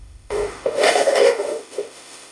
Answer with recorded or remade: remade